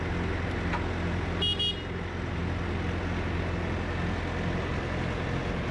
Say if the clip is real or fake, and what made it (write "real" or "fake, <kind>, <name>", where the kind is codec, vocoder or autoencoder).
real